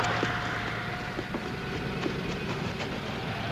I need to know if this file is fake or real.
real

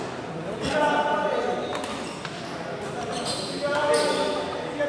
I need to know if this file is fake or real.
real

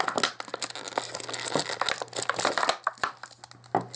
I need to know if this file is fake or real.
real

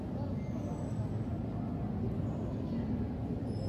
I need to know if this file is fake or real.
real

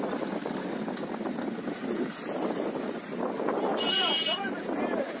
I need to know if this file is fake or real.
real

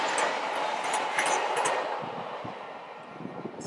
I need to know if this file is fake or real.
real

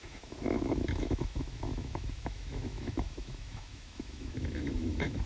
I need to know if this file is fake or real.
fake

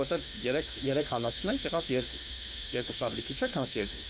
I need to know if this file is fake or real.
fake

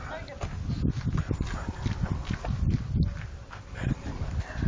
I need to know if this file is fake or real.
real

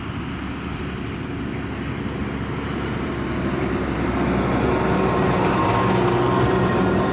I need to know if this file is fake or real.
real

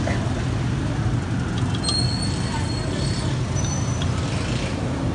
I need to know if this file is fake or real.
real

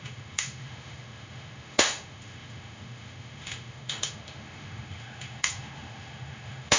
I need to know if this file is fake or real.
fake